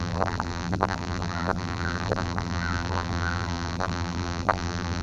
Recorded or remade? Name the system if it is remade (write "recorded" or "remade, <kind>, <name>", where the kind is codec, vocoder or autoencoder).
remade, vocoder, BigVGAN v2